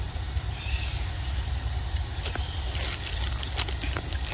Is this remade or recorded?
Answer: recorded